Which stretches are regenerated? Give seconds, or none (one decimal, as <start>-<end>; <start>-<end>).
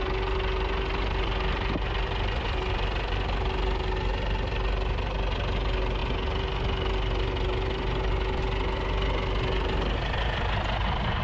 none